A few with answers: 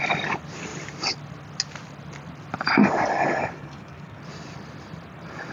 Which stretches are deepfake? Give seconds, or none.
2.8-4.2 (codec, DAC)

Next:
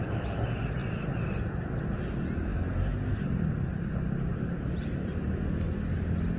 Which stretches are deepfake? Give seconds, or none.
2.5-3.4 (codec, DAC)